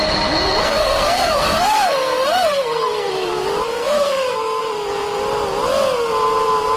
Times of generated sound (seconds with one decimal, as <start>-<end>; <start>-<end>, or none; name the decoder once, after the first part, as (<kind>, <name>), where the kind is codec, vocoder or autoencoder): 0.6-3.1 (codec, SNAC); 3.7-4.6